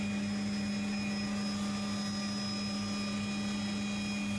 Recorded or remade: recorded